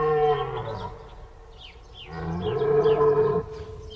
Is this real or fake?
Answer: real